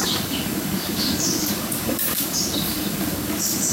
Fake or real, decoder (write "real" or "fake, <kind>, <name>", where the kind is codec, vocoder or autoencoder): fake, codec, DAC